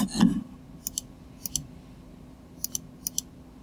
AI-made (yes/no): no